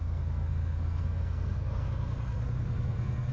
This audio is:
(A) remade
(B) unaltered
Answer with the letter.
A